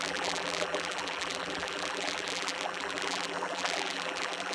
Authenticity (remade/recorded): remade